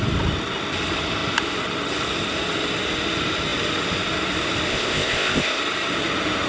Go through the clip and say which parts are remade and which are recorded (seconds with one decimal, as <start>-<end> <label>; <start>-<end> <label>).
0.0-4.7 recorded; 4.7-5.6 remade; 5.6-6.5 recorded